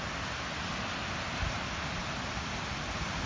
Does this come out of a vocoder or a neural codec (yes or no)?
no